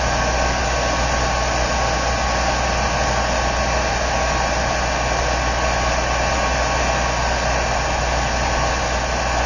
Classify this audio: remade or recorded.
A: recorded